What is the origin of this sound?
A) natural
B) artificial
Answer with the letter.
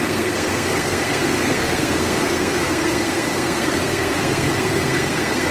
B